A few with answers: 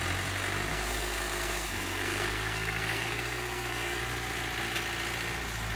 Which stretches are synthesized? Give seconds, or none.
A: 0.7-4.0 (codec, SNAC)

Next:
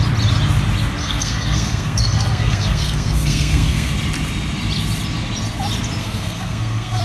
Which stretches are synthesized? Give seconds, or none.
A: 1.0-3.9 (codec, SNAC); 6.0-7.0